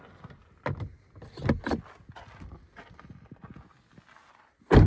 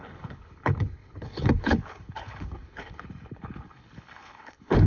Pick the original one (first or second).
first